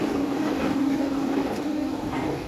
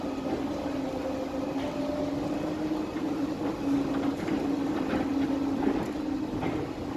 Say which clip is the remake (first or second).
first